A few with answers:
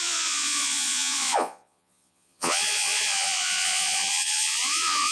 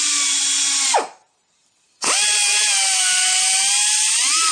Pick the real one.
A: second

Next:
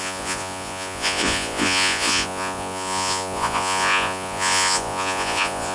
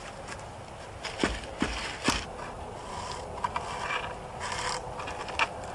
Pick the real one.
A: second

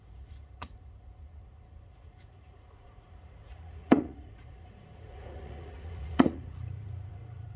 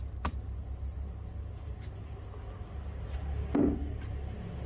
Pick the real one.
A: second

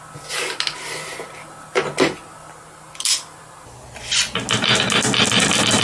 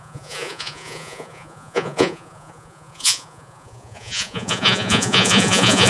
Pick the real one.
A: first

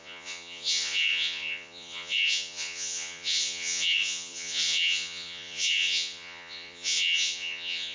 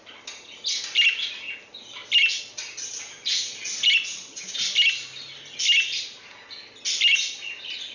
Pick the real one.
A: second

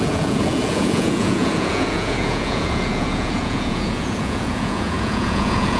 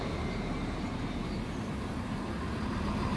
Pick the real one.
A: second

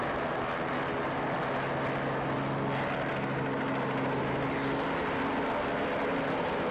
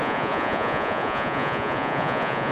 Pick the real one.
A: first